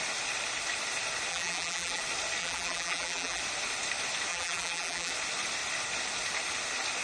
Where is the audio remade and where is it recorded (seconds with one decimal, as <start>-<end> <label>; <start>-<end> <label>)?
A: 0.0-1.3 recorded; 1.3-2.0 remade; 2.0-2.4 recorded; 2.4-3.4 remade; 3.4-4.3 recorded; 4.3-5.1 remade; 5.1-7.0 recorded